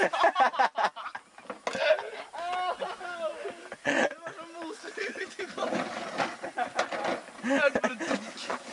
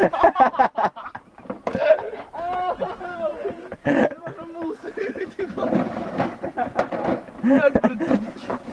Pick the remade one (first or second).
second